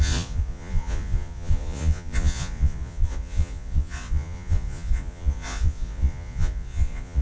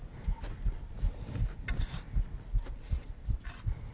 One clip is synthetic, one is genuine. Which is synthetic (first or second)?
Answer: first